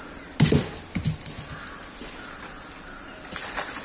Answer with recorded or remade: recorded